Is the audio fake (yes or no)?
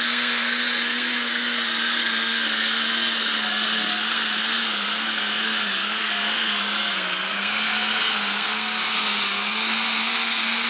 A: yes